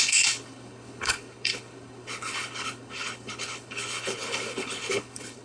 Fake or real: fake